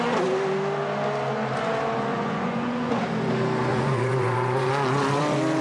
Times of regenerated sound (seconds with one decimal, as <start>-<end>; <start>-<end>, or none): 2.1-2.9; 3.7-4.7